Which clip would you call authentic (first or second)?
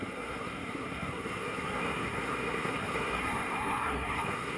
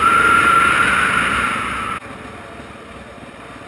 second